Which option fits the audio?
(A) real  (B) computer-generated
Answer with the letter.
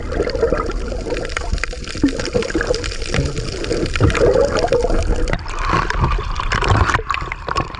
A